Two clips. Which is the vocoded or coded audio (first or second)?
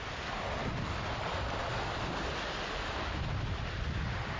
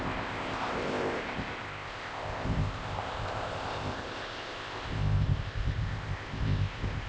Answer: second